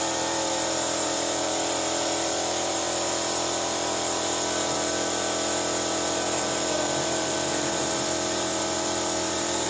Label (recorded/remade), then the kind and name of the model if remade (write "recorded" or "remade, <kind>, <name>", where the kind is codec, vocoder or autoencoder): remade, vocoder, BigVGAN v2